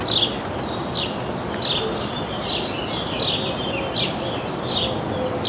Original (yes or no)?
yes